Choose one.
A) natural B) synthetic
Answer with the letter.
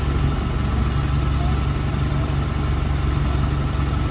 A